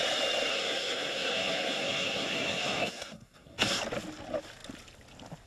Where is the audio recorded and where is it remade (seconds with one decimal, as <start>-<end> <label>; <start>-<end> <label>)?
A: 0.0-0.5 recorded; 0.5-3.8 remade; 3.8-5.5 recorded